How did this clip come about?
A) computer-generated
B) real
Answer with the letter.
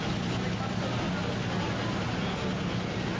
B